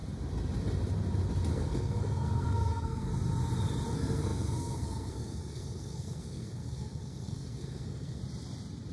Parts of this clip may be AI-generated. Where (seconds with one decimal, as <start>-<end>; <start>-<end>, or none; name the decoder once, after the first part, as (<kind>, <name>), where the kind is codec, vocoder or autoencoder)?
1.5-3.1 (codec, SNAC); 3.9-8.2